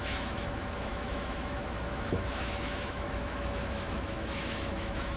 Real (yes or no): no